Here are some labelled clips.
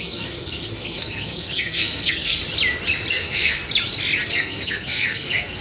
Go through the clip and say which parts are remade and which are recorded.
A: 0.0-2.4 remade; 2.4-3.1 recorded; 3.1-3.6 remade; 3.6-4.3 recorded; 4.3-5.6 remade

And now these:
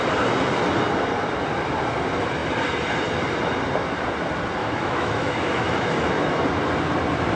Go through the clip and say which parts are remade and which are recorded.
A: 0.0-4.6 recorded; 4.6-6.4 remade; 6.4-7.4 recorded

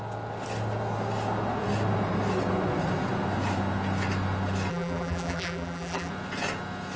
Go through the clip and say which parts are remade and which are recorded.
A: 0.0-4.7 recorded; 4.7-6.1 remade; 6.1-7.0 recorded